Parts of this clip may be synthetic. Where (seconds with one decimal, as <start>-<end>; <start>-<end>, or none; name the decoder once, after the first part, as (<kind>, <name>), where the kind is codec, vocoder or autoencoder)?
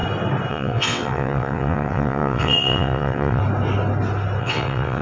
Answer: 0.5-3.4 (vocoder, WaveNeXt); 4.4-5.0